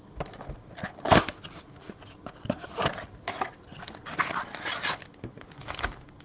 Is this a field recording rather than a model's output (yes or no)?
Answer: yes